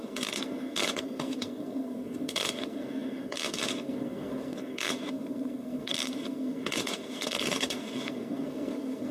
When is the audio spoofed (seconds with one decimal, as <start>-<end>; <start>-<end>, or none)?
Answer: 0.0-9.1